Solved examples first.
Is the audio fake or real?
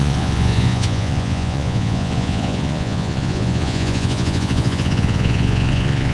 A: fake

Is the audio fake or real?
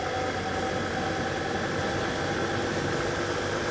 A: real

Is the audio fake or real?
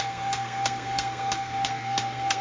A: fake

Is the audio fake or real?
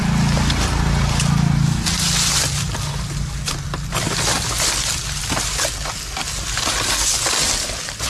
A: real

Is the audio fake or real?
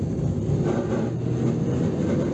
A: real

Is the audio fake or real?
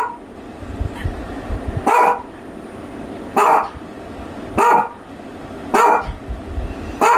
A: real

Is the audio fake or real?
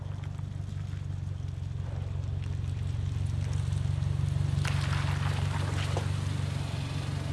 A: real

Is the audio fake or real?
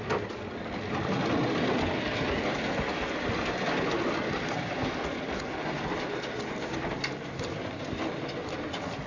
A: real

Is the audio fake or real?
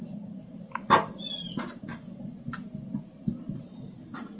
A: real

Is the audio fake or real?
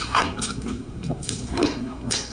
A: fake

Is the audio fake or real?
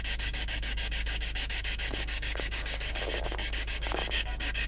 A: fake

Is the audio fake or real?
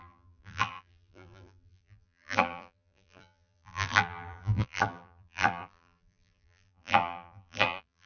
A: fake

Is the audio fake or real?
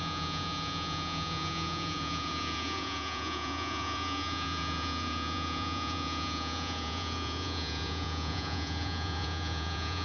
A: fake